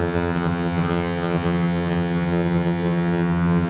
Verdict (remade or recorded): remade